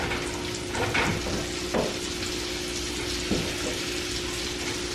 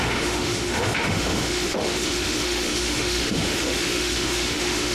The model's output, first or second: second